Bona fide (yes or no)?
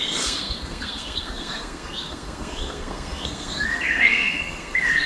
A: no